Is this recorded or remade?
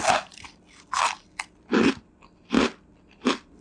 recorded